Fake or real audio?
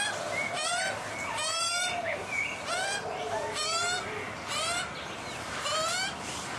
real